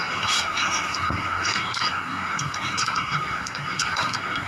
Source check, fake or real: fake